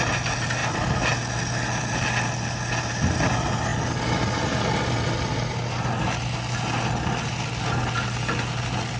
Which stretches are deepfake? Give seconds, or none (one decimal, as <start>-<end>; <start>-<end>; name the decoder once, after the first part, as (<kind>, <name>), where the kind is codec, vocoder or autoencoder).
none